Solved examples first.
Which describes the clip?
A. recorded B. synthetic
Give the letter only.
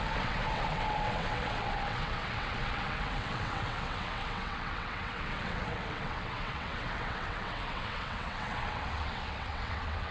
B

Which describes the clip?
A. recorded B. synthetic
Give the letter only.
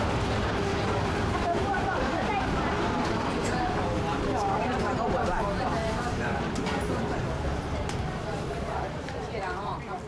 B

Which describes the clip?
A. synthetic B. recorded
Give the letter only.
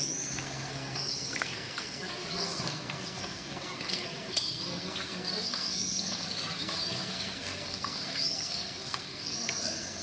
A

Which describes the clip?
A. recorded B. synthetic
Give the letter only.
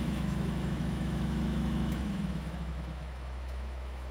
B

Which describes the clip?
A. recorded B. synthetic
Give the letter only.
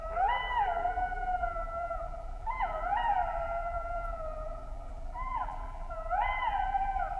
B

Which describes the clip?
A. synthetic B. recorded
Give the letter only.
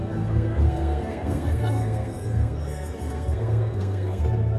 A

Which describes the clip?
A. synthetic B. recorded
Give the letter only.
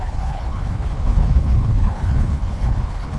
A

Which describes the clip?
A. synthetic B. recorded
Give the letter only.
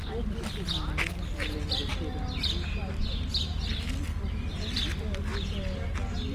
B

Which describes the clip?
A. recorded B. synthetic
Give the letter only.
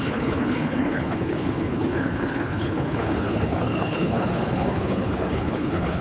B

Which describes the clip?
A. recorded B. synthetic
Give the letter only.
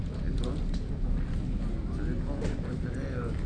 A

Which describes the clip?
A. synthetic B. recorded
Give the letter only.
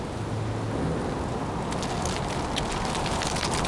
B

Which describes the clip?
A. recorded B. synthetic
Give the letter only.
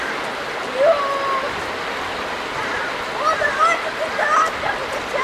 A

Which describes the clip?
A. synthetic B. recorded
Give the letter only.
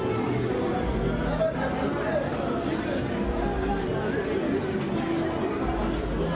B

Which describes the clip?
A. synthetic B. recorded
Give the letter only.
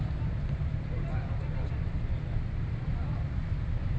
B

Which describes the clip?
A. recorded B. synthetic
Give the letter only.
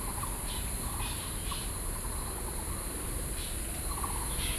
A